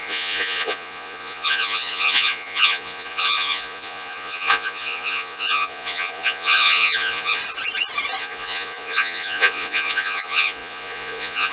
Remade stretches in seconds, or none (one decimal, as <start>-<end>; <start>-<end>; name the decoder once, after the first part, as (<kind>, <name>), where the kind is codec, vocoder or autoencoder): 0.0-7.4 (vocoder, Vocos); 8.2-11.5